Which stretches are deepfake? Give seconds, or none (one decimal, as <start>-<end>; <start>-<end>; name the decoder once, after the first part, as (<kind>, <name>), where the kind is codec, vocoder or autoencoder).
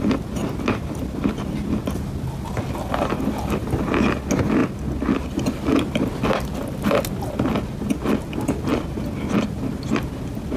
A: none